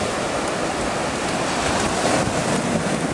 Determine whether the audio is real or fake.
real